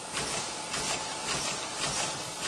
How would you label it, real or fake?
real